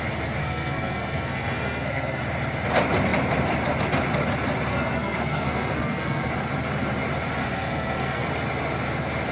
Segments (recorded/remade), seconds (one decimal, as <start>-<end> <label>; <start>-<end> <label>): 0.0-0.4 recorded; 0.4-2.2 remade; 2.2-4.7 recorded; 4.7-6.3 remade; 6.3-7.4 recorded; 7.4-8.3 remade; 8.3-9.3 recorded